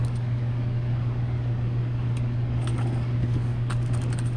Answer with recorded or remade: remade